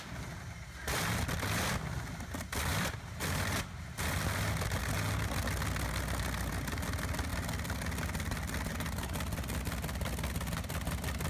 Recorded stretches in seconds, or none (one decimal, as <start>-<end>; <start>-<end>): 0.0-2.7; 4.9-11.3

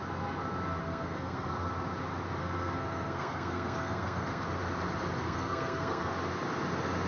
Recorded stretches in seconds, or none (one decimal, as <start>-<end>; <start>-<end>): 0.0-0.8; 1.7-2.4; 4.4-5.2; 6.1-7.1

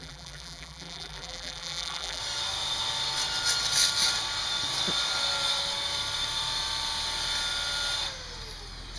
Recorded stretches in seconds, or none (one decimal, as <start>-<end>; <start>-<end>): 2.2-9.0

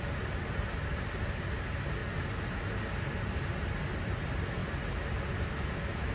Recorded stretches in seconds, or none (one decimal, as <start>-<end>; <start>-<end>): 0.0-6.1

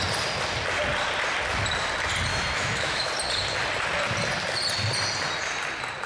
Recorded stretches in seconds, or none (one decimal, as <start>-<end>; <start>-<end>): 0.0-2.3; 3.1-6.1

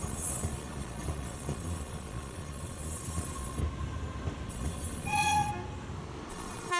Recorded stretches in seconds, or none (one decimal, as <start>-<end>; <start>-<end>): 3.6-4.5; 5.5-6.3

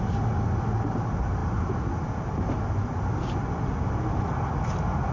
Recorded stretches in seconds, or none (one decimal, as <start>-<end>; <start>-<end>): 0.0-5.1